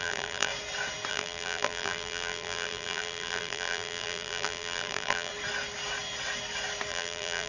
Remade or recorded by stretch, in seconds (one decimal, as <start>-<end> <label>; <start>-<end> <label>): 0.0-0.5 remade; 0.5-1.1 recorded; 1.1-5.3 remade; 5.3-6.9 recorded; 6.9-7.5 remade